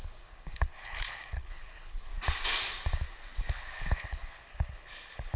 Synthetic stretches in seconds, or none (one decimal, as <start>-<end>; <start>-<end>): 0.0-2.1; 3.5-5.4

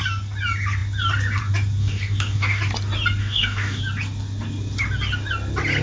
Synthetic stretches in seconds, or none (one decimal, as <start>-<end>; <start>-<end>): 1.8-2.6; 3.2-3.8

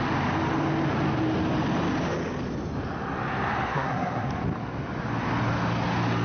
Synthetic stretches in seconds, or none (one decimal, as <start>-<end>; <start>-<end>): 3.7-4.3

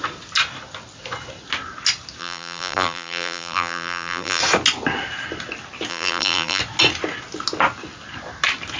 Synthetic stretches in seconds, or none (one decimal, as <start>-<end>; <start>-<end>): 2.2-4.4; 5.9-6.6

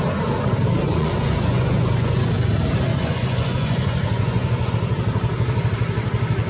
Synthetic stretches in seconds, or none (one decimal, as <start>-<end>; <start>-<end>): 0.9-2.3; 2.9-4.7

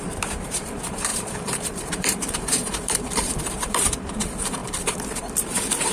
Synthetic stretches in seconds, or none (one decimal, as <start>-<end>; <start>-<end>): 0.0-5.9